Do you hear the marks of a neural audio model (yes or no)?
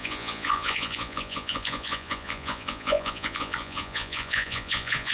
yes